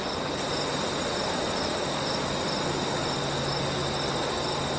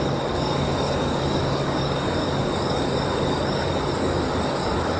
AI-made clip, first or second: second